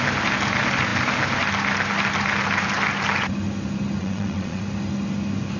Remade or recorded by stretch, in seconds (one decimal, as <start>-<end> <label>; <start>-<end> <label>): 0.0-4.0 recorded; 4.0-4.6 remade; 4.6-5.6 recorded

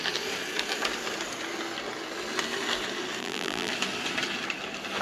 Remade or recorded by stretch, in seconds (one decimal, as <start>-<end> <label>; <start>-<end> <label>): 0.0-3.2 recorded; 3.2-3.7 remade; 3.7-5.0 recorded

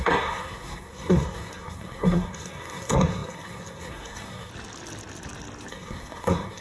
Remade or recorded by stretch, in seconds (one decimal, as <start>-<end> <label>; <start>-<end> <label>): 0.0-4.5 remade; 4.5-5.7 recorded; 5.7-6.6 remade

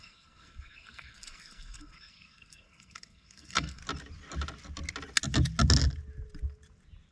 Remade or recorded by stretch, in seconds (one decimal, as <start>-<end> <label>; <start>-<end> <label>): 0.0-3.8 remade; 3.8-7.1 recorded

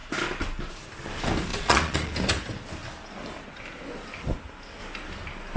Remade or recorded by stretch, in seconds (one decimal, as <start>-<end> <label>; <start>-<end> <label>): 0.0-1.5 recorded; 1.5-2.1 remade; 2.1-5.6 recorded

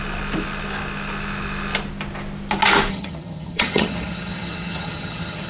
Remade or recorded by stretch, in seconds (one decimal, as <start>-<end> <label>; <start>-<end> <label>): 0.0-2.9 recorded; 2.9-5.5 remade

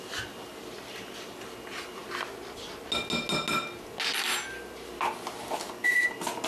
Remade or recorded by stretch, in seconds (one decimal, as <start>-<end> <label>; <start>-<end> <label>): 0.0-6.5 recorded